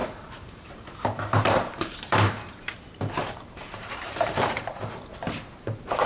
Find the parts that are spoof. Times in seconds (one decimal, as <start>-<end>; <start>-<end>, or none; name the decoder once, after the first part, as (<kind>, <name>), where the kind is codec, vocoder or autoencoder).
0.0-2.7 (vocoder, BigVGAN v2); 3.2-4.8